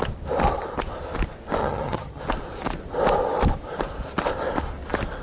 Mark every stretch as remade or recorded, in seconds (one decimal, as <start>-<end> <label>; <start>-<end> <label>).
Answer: 0.0-1.6 recorded; 1.6-2.2 remade; 2.2-5.2 recorded